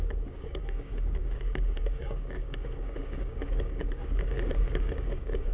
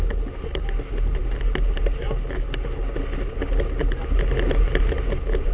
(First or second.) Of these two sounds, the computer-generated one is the first